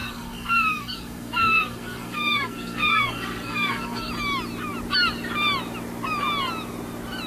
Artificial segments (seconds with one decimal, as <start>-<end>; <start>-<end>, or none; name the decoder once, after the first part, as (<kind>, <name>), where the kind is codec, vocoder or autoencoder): 0.0-4.1 (codec, SNAC)